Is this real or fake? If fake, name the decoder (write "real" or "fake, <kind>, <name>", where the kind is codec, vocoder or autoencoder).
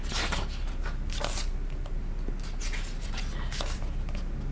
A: real